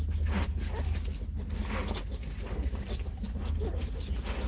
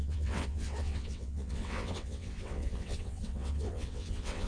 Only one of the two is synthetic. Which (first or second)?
second